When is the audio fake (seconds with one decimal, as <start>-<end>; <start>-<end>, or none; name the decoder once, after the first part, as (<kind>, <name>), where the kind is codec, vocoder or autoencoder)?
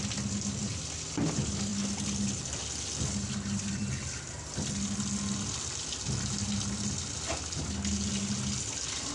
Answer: none